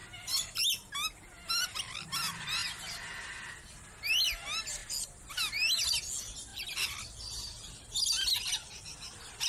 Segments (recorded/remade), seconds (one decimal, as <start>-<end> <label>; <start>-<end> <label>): 0.0-9.5 recorded

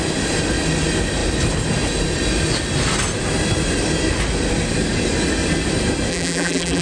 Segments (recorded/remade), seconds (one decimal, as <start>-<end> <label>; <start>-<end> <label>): 0.0-6.1 recorded; 6.1-6.8 remade

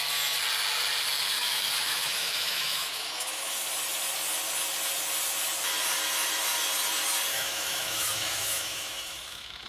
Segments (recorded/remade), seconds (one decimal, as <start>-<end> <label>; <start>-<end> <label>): 0.0-1.2 recorded; 1.2-3.5 remade; 3.5-7.3 recorded; 7.3-9.7 remade